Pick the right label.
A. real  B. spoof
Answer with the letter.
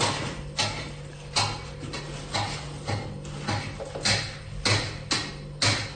A